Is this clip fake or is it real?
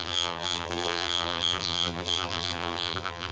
fake